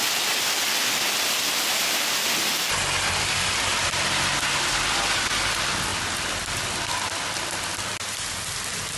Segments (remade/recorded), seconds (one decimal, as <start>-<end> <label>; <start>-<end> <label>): 0.0-9.0 recorded